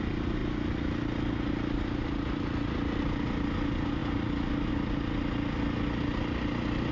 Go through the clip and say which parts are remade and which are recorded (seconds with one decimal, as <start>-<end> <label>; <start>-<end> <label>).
0.0-6.9 recorded